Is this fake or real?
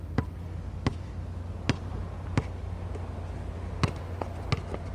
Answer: real